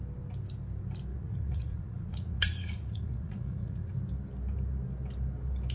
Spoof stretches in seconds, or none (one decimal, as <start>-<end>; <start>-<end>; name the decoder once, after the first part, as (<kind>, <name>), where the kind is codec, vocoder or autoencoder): 1.1-3.9 (vocoder, Vocos)